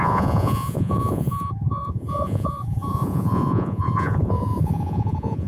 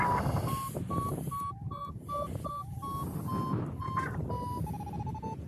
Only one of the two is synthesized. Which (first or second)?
first